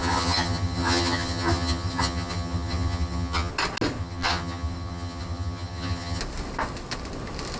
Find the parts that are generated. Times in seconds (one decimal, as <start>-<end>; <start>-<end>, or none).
0.0-3.5; 4.0-6.2